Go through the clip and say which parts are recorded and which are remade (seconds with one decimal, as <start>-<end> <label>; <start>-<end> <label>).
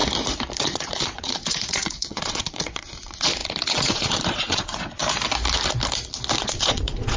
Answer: 0.0-0.6 recorded; 0.6-5.0 remade; 5.0-6.4 recorded; 6.4-7.2 remade